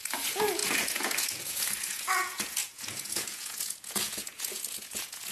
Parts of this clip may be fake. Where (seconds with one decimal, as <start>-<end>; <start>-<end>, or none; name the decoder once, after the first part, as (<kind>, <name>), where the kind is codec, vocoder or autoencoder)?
0.0-5.3 (vocoder, Vocos)